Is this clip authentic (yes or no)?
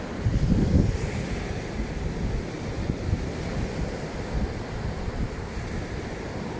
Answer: no